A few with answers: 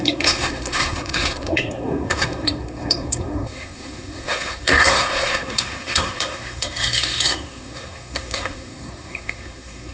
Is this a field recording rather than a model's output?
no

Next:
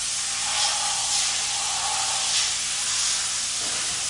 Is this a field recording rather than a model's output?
yes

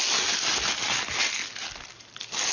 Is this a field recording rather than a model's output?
yes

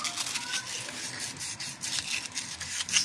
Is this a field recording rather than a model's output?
yes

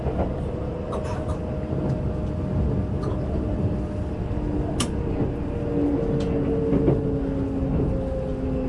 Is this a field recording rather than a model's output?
yes